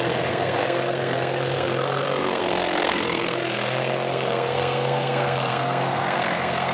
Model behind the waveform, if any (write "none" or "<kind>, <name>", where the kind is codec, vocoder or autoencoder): codec, SNAC